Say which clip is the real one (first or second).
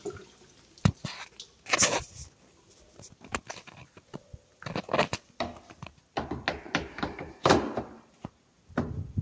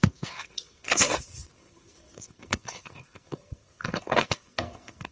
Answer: first